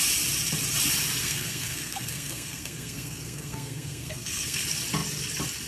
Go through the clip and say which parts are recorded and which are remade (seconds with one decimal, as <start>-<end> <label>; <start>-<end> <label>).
0.0-1.2 recorded; 1.2-4.6 remade; 4.6-5.7 recorded